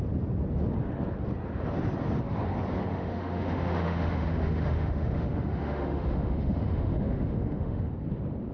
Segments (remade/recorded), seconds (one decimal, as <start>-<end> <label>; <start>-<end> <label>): 0.0-2.9 recorded; 2.9-7.9 remade; 7.9-8.5 recorded